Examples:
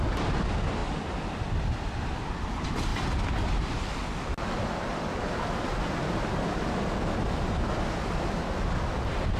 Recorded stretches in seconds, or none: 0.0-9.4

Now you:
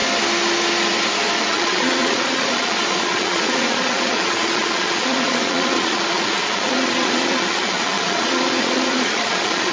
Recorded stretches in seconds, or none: 0.0-1.4

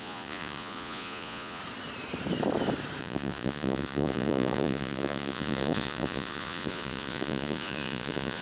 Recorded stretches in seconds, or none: 1.6-3.0

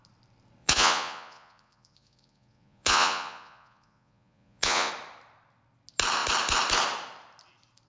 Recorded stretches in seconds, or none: 0.0-0.6; 4.9-7.9

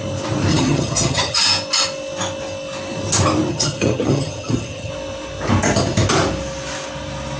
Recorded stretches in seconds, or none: 0.0-0.5; 1.4-3.5; 4.9-7.4